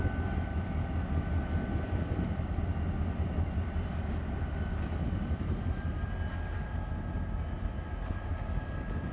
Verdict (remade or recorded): recorded